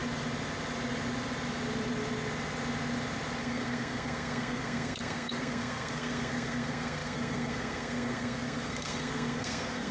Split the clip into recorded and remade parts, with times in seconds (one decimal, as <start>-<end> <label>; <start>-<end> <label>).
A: 0.0-3.4 recorded; 3.4-9.9 remade